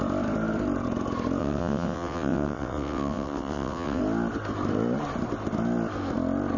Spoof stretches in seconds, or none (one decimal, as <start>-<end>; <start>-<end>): 1.4-4.0